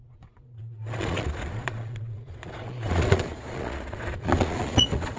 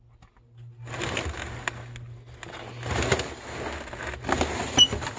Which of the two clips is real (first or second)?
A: second